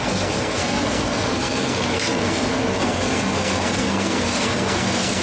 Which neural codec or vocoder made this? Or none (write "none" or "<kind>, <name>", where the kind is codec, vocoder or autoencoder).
codec, SNAC